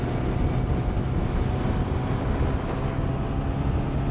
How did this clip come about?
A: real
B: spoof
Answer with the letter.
A